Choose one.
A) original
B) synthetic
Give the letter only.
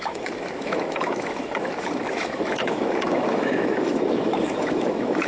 B